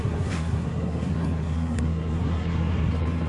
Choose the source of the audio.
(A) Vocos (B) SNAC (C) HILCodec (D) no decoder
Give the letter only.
B